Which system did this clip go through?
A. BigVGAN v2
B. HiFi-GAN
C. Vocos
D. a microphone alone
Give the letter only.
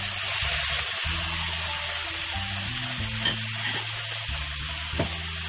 D